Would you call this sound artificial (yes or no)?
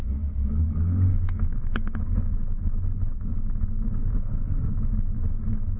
yes